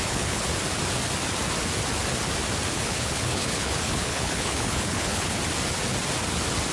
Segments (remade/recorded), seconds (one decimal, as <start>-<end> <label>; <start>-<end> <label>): 0.0-0.5 remade; 0.5-2.7 recorded; 2.7-5.4 remade; 5.4-6.7 recorded